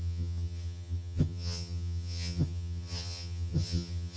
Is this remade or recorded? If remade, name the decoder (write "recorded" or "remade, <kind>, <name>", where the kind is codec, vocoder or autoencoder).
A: remade, vocoder, HiFi-GAN